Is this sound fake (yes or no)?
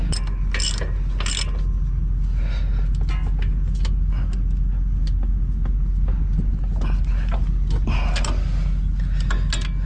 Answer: no